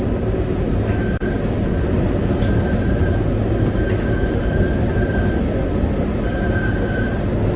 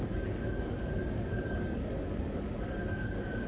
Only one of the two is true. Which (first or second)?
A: first